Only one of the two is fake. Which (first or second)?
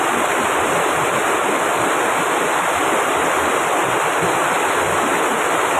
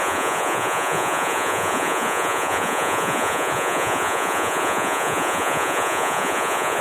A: second